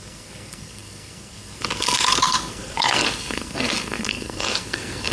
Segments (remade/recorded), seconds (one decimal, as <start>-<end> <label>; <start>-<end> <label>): 0.0-5.1 remade